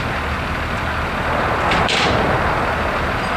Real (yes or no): yes